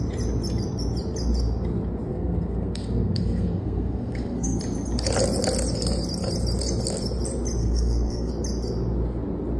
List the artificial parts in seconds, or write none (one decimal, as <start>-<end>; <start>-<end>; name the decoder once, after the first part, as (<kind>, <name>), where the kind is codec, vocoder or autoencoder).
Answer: 2.1-4.6 (codec, SNAC); 7.6-8.3